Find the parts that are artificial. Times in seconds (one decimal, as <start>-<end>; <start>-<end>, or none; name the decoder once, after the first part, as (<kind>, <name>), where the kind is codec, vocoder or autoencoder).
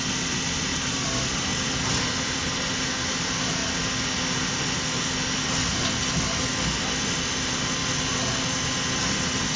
0.7-2.5 (vocoder, BigVGAN v2)